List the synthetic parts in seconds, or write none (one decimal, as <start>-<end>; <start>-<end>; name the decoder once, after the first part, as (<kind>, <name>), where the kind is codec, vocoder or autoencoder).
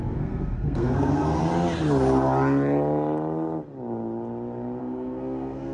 0.0-1.4 (codec, SNAC); 4.8-5.7